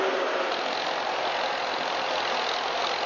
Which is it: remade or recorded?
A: recorded